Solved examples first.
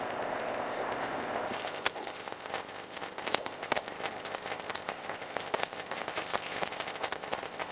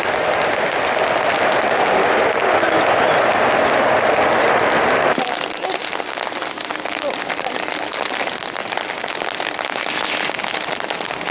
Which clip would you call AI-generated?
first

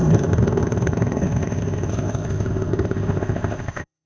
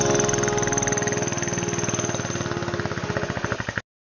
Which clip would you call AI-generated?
first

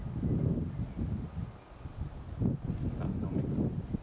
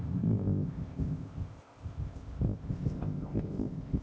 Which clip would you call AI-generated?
second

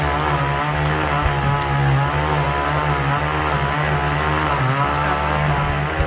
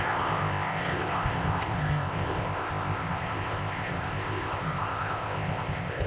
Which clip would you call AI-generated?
second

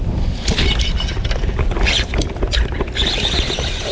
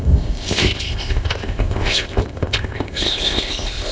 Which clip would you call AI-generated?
second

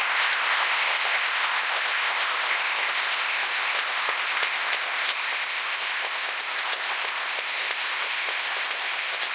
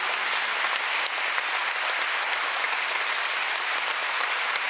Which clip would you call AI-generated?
first